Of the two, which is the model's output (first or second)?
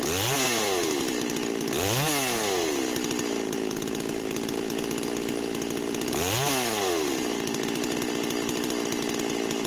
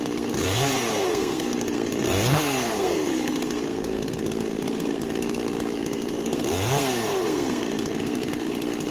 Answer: second